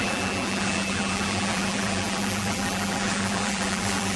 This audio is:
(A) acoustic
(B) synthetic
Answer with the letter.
B